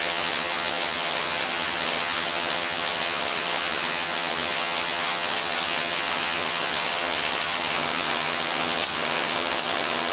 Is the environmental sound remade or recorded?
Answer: remade